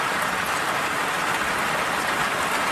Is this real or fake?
real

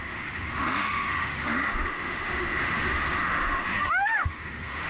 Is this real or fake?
fake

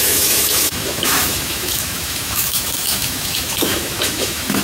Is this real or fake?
fake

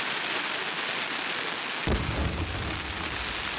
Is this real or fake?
real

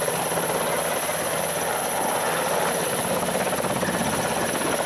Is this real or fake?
real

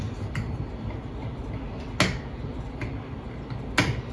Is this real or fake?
real